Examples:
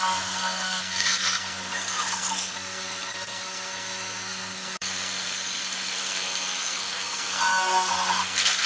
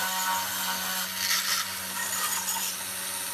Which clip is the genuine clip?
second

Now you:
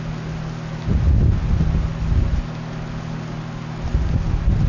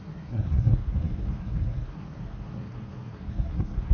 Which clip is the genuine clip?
first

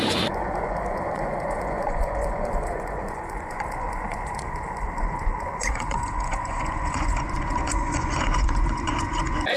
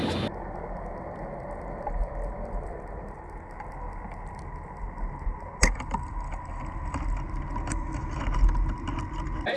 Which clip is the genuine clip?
second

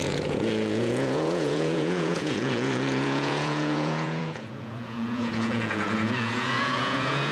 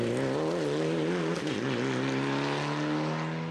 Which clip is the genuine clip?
second